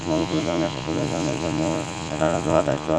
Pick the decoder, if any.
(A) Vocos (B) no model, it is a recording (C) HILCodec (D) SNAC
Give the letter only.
A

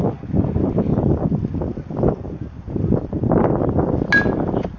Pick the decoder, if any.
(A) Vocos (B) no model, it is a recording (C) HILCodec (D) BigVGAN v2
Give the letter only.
B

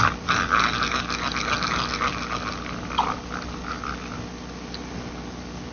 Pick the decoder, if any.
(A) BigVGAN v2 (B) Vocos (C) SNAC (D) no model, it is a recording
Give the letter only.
D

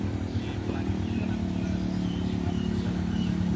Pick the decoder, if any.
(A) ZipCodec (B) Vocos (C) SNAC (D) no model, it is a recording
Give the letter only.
D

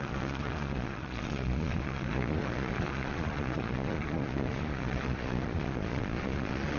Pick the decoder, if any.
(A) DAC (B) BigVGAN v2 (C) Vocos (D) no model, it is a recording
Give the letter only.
C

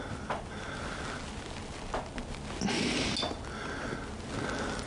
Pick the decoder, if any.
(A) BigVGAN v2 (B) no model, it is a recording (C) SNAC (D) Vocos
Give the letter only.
B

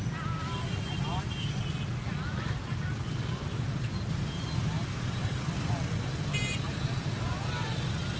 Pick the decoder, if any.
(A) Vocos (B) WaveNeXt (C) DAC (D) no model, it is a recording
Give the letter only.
D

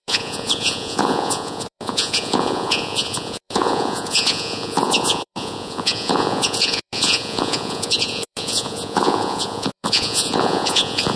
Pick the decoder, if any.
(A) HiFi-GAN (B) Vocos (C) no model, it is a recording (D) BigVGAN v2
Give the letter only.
B